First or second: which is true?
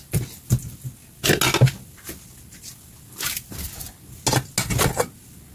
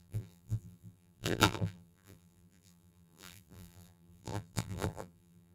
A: first